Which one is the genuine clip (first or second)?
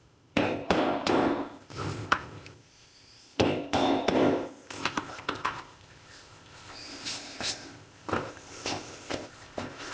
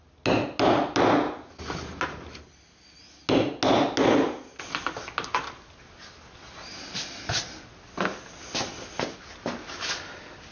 second